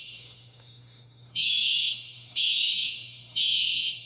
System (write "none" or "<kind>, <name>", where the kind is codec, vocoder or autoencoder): autoencoder, DAC-VAE